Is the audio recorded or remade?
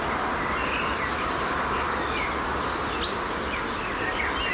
recorded